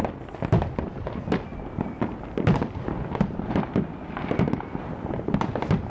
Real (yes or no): yes